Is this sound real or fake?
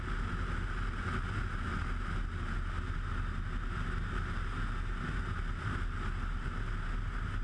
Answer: real